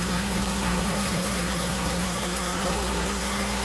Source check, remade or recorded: remade